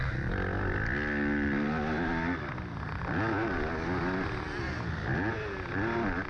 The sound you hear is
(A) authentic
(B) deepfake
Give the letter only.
A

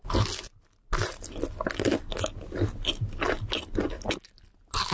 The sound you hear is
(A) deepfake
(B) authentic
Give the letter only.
B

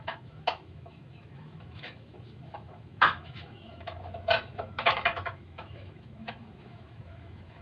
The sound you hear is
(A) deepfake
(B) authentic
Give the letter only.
A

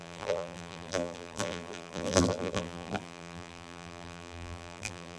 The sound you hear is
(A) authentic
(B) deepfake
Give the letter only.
B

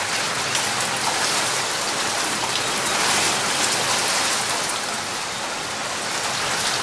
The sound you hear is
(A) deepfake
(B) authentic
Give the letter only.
B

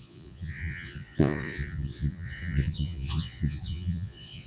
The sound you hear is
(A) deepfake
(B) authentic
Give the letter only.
A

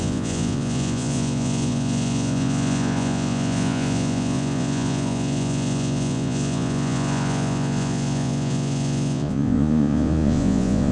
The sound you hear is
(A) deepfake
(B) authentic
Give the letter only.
A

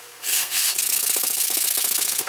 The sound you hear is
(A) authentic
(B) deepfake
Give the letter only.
B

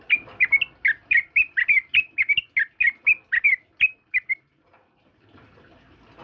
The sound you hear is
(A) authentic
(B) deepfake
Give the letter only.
A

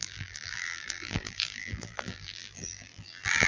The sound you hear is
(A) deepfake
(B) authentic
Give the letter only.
A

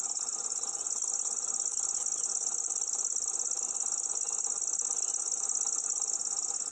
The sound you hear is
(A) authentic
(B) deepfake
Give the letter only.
A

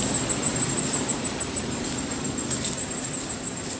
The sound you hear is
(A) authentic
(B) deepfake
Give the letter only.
B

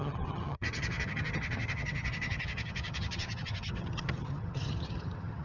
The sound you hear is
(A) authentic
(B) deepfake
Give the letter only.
B